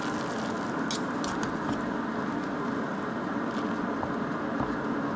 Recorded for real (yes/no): yes